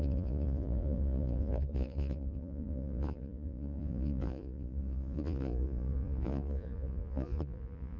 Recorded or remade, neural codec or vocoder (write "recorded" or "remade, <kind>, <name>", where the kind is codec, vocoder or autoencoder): remade, vocoder, Vocos